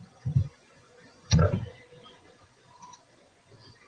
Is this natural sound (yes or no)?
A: no